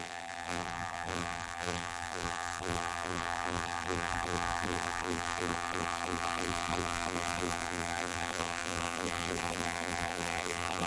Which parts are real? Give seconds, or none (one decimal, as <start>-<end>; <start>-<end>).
none